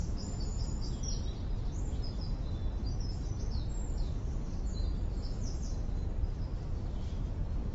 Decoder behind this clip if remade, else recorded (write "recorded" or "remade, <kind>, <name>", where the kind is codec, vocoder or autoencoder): recorded